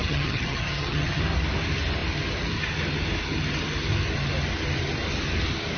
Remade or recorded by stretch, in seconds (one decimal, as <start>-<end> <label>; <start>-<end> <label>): 0.0-1.2 remade; 1.2-5.8 recorded